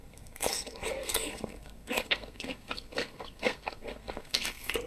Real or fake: fake